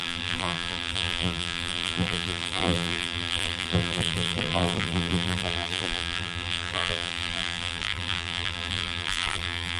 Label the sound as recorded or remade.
remade